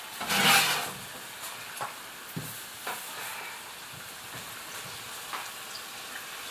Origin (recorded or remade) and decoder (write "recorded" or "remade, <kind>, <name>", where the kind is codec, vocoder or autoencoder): recorded